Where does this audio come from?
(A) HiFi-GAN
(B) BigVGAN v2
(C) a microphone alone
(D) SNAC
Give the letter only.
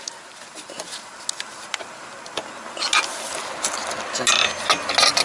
C